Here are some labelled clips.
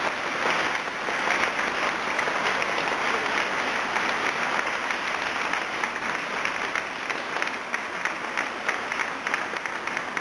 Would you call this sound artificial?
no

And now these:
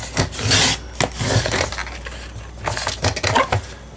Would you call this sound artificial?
no